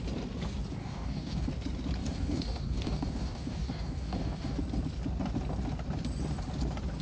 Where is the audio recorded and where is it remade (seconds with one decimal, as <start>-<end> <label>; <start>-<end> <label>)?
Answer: 0.0-0.8 recorded; 0.8-1.5 remade; 1.5-2.0 recorded; 2.0-4.6 remade; 4.6-7.0 recorded